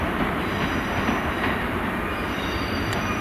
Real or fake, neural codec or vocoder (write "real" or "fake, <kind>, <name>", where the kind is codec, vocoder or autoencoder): fake, vocoder, BigVGAN v2